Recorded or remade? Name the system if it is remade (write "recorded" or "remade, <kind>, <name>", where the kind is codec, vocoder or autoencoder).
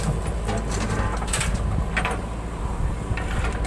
recorded